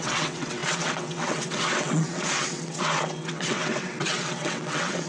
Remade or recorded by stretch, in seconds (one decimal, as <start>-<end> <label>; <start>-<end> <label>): 0.0-5.1 remade